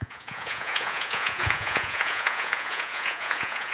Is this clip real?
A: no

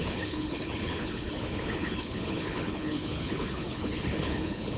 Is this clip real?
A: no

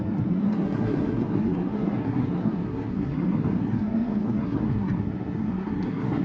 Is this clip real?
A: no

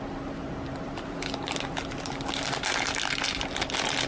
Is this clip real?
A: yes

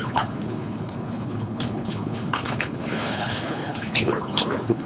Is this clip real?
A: no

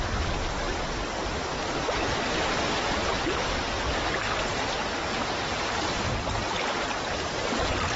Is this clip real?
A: yes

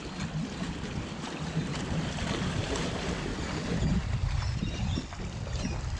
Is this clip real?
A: yes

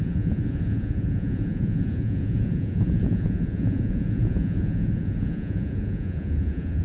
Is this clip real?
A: no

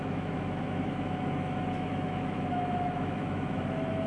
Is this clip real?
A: no